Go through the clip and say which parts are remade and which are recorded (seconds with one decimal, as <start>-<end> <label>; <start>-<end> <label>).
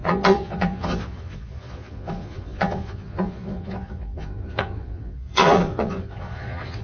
0.0-6.8 remade